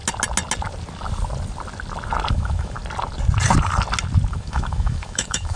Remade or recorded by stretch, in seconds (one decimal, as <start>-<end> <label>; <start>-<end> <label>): 0.0-2.3 recorded; 2.3-2.8 remade; 2.8-4.3 recorded; 4.3-5.6 remade